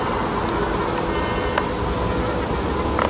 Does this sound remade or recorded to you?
recorded